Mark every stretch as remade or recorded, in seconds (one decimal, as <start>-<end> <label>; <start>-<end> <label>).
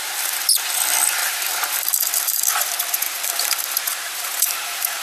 0.0-5.0 remade